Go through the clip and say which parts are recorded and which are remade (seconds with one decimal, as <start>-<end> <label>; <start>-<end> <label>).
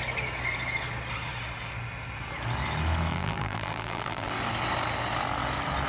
0.0-3.1 recorded; 3.1-4.3 remade; 4.3-5.9 recorded